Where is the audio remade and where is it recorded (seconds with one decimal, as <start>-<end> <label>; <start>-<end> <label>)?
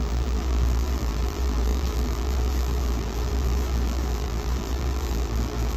0.0-5.8 remade